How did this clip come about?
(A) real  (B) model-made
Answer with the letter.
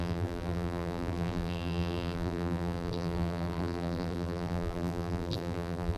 B